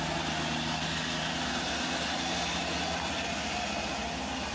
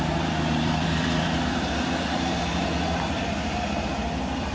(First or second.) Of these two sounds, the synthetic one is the second